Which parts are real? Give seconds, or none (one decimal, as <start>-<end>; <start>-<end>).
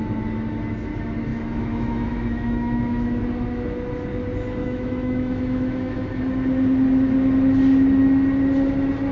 0.0-1.3; 3.2-4.6; 6.2-9.1